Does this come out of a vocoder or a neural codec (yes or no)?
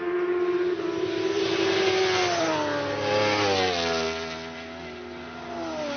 no